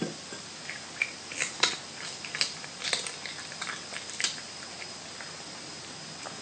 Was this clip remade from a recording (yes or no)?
no